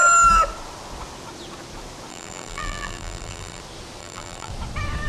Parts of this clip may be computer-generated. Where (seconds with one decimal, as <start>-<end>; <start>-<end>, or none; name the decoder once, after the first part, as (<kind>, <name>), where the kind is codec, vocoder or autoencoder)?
2.1-3.6 (vocoder, BigVGAN v2); 4.0-4.5